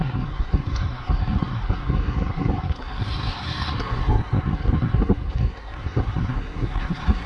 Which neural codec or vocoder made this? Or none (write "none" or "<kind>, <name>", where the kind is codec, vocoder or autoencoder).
codec, SNAC